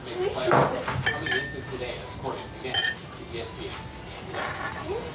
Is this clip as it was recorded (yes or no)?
yes